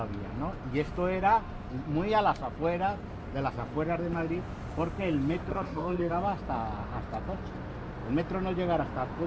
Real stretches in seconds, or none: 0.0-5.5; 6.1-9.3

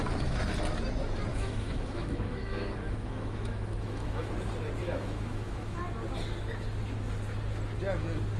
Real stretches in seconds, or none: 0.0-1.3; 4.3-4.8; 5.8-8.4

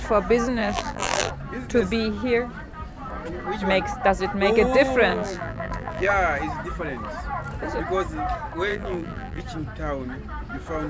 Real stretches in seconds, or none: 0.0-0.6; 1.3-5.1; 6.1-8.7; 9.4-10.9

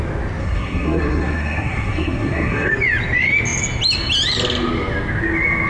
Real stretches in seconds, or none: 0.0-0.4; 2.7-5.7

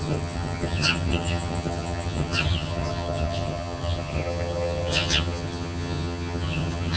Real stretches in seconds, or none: none

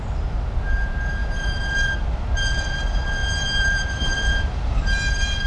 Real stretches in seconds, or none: 0.0-1.2; 2.6-3.2; 4.8-5.5

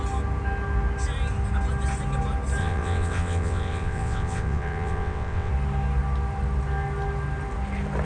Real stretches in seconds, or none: 0.0-2.6; 5.5-8.0

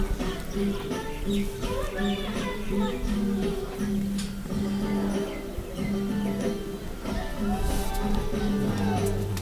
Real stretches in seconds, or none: 0.0-9.4